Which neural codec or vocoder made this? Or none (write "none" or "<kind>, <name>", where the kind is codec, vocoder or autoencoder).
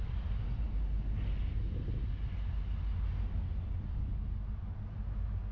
none